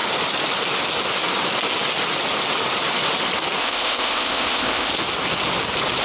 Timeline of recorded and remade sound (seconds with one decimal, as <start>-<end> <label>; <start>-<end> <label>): 0.0-3.6 recorded; 3.6-4.9 remade; 4.9-6.0 recorded